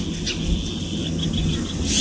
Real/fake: real